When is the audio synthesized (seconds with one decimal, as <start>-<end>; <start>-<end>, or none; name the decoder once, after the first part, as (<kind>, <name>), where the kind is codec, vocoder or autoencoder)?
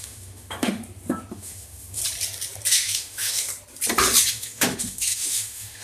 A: 0.0-0.8 (autoencoder, DAC-VAE); 1.3-2.0; 2.7-3.5; 4.3-5.8